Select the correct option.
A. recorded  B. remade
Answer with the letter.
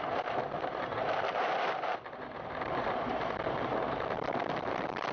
B